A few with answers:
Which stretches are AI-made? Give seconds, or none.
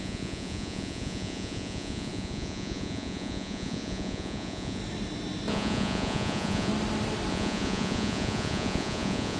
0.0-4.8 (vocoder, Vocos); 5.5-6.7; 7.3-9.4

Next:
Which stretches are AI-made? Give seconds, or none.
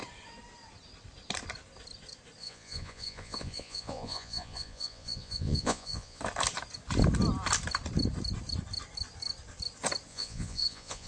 2.4-6.2 (vocoder, Vocos); 10.1-11.1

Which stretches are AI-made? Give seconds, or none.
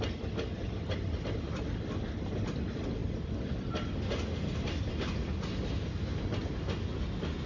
none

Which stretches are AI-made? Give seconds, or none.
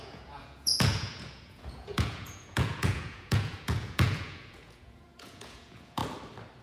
0.0-6.0 (vocoder, Vocos)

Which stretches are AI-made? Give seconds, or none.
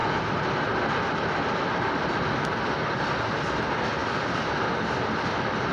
none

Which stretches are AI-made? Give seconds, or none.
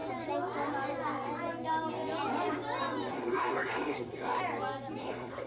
3.1-4.4 (codec, SNAC); 5.0-5.5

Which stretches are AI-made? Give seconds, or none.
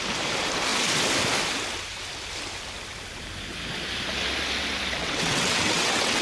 5.0-6.2 (vocoder, WaveNeXt)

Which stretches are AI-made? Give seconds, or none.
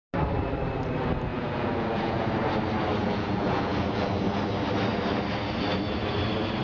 1.3-2.3 (vocoder, Vocos); 3.0-4.1